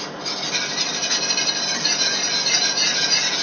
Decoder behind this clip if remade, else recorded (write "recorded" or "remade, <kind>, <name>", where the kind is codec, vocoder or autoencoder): recorded